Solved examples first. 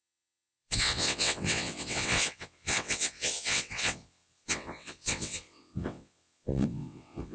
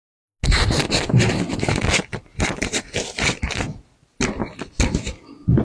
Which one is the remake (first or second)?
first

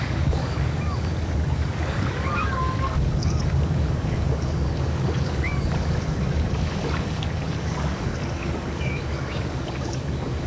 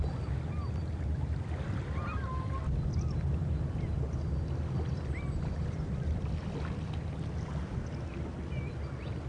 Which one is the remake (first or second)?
first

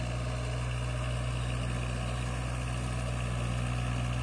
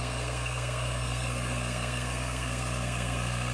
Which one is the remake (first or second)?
second